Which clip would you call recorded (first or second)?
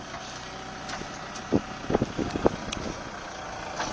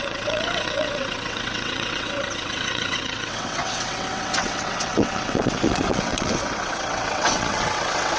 first